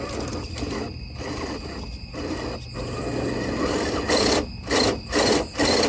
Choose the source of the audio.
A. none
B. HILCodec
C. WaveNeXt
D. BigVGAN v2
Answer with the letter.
A